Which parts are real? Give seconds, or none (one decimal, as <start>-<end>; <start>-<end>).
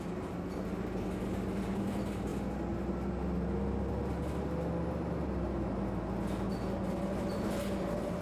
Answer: 0.0-8.2